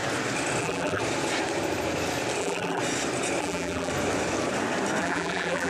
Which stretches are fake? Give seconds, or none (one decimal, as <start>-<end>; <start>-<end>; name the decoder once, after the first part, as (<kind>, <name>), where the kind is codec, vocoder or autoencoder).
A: 0.6-1.0 (vocoder, BigVGAN v2); 2.4-2.8; 3.4-3.9; 5.0-5.7